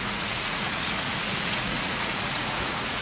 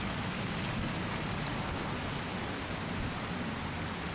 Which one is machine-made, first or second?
first